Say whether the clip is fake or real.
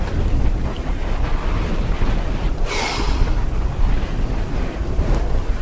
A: real